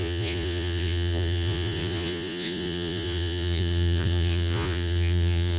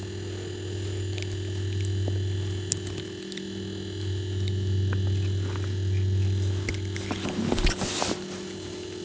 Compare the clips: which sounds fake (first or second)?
first